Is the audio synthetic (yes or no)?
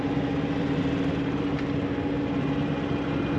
no